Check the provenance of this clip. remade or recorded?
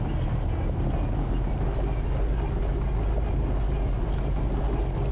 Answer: recorded